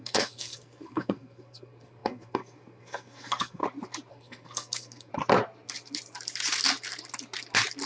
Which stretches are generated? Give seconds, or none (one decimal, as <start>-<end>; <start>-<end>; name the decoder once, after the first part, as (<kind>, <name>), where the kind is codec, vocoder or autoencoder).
0.0-3.6 (codec, SNAC); 4.1-5.1